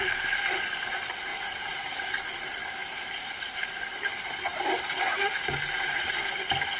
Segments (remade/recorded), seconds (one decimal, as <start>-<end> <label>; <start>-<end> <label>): 0.0-6.8 recorded